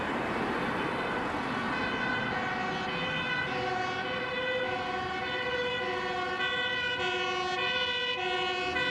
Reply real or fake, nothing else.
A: real